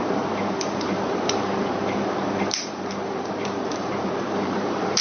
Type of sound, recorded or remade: remade